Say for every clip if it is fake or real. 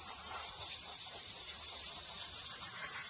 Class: fake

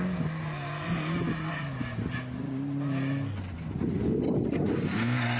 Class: real